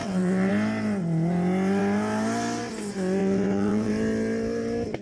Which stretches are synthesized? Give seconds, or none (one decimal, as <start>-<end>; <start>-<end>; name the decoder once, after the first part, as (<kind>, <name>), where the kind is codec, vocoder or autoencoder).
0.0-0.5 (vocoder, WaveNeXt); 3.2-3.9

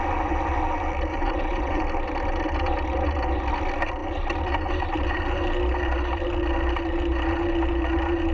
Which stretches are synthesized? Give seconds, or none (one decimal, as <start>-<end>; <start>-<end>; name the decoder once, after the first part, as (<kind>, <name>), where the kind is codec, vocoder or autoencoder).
1.1-1.8 (vocoder, WaveNeXt)

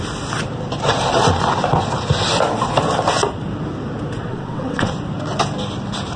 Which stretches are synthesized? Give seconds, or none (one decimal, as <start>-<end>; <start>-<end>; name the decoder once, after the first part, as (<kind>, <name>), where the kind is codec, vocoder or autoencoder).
4.3-4.9 (vocoder, WaveNeXt)

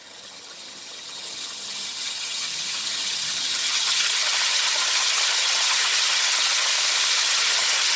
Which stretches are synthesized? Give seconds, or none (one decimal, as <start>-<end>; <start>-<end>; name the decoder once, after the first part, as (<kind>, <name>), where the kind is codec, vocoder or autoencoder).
0.0-6.7 (vocoder, HiFi-GAN); 7.2-8.0

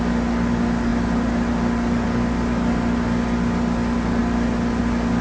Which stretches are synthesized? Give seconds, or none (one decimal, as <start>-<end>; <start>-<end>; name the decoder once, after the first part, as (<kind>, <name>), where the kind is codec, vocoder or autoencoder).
none

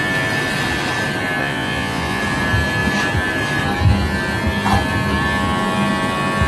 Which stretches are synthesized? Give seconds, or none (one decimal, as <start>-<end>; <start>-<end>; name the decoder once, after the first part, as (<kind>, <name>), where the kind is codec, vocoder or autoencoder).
1.4-2.2 (vocoder, Vocos)

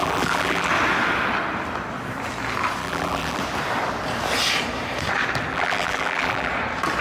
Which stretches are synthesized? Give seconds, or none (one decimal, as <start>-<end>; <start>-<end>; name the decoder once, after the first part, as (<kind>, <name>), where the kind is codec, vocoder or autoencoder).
0.0-0.7 (vocoder, BigVGAN v2); 2.8-3.4; 5.5-6.5